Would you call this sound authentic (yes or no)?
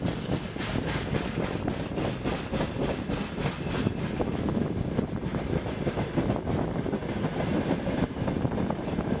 yes